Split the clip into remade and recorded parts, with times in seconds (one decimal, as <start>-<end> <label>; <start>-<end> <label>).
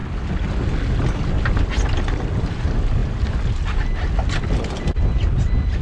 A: 0.0-5.8 recorded